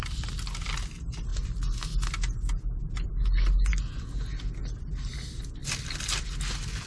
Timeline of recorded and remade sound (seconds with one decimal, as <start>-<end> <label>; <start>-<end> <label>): 0.0-6.9 recorded